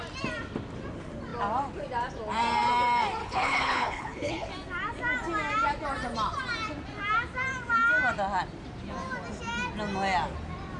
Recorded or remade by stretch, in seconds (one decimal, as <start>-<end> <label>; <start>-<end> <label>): 0.0-3.2 recorded; 3.2-4.5 remade; 4.5-10.8 recorded